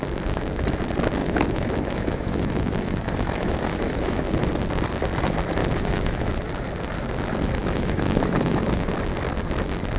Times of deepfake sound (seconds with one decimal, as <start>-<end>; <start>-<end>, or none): 1.2-4.4; 5.6-6.3; 7.6-8.9